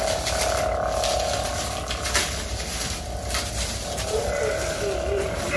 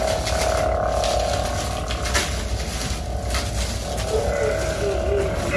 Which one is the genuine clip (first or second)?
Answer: second